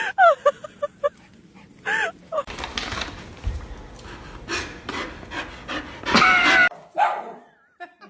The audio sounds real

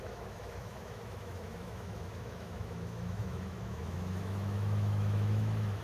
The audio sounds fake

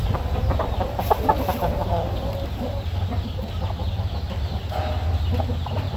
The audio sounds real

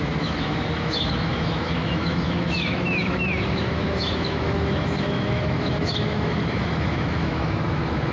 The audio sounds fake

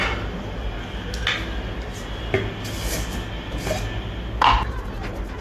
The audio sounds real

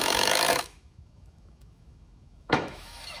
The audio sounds fake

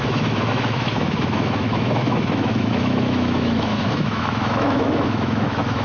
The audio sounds fake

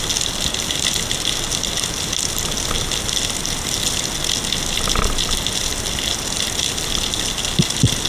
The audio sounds real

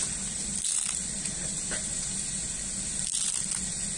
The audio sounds real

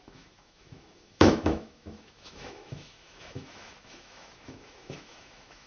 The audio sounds fake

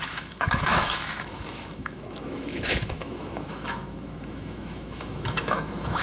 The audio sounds fake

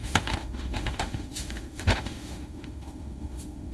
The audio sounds fake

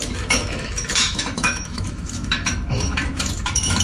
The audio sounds fake